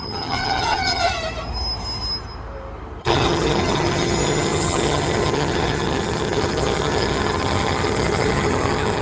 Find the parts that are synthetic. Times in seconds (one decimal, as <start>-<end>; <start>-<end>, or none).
0.0-1.1; 3.0-9.0